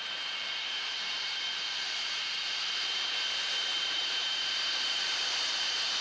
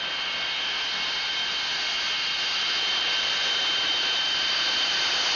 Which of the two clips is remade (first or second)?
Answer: first